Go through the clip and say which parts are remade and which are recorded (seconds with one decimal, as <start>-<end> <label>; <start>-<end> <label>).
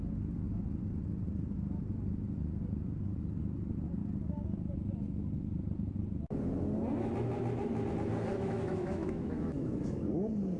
0.0-8.3 recorded; 8.3-10.0 remade; 10.0-10.6 recorded